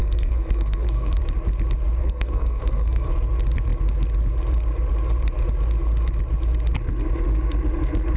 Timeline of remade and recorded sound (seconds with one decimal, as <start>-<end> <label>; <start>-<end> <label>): 0.0-1.2 remade; 1.2-2.0 recorded; 2.0-3.1 remade; 3.1-8.2 recorded